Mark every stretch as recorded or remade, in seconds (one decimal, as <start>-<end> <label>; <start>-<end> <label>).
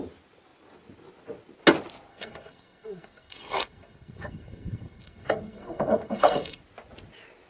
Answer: 0.0-2.1 recorded; 2.1-6.6 remade; 6.6-7.5 recorded